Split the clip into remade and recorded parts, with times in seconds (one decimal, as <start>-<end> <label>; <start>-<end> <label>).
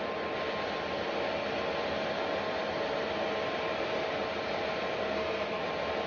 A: 0.0-5.0 recorded; 5.0-5.6 remade; 5.6-6.1 recorded